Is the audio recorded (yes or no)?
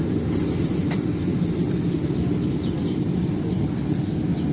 yes